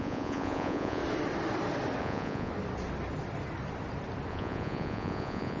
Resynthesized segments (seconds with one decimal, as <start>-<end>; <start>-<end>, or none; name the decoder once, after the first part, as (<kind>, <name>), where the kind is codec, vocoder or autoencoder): 0.0-1.0 (vocoder, Vocos); 2.0-2.5; 4.3-5.6